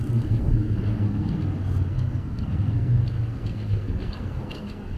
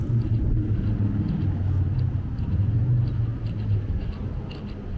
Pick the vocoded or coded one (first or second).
first